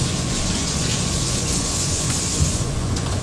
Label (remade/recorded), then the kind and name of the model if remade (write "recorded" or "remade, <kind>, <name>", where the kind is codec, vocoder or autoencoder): remade, vocoder, Vocos